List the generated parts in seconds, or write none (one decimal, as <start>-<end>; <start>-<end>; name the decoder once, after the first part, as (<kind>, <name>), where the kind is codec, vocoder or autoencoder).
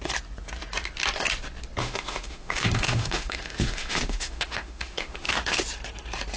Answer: 1.8-5.6 (autoencoder, DAC-VAE)